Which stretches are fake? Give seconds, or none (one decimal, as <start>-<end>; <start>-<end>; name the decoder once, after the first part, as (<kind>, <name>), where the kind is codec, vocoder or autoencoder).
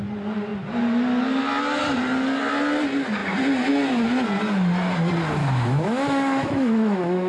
5.4-7.3 (autoencoder, DAC-VAE)